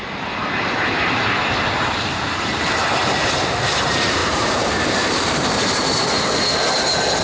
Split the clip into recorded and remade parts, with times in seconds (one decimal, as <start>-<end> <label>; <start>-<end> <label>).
0.0-4.2 recorded; 4.2-6.3 remade; 6.3-7.2 recorded